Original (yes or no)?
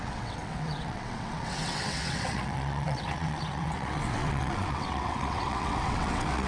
no